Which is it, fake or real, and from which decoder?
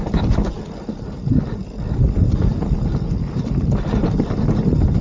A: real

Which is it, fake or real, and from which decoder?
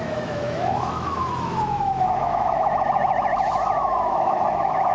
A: fake, autoencoder, DAC-VAE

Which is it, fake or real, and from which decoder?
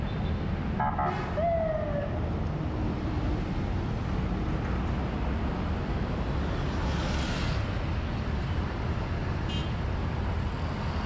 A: real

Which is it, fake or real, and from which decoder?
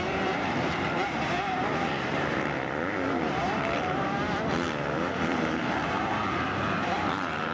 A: fake, vocoder, BigVGAN v2